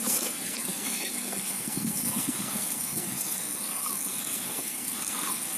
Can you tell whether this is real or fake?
fake